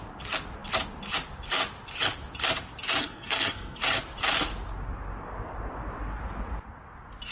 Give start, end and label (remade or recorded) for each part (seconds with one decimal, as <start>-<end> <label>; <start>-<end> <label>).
0.0-3.0 recorded; 3.0-3.8 remade; 3.8-7.3 recorded